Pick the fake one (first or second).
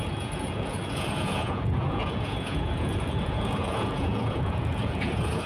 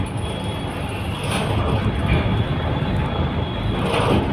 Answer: first